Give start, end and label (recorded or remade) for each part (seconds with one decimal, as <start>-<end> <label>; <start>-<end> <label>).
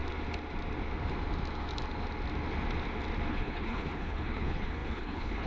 0.0-3.3 recorded; 3.3-5.5 remade